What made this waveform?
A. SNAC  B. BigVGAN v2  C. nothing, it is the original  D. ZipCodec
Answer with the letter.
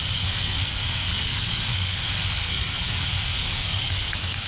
A